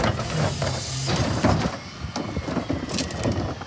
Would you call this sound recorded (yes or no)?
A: yes